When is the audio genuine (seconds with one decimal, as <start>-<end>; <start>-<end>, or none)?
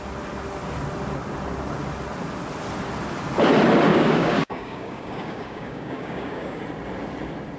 0.0-3.9; 6.6-7.6